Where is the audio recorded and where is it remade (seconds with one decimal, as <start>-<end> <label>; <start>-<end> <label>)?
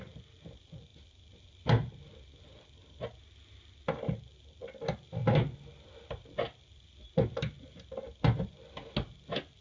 0.0-9.6 recorded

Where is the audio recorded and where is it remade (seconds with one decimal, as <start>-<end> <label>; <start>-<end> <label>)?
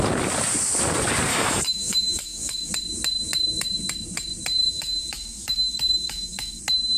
0.0-1.3 recorded; 1.3-2.7 remade; 2.7-4.6 recorded; 4.6-6.6 remade; 6.6-7.0 recorded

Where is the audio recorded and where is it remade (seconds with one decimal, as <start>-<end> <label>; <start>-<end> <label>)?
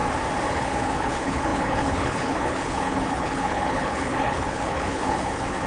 0.0-0.5 recorded; 0.5-5.7 remade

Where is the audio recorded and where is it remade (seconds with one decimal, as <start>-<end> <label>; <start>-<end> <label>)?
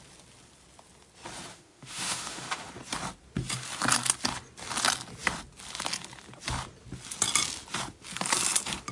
0.0-1.5 recorded; 1.5-2.7 remade; 2.7-8.9 recorded